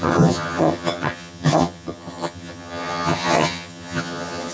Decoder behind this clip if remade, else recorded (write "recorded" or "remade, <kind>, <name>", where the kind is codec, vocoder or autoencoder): remade, vocoder, HiFi-GAN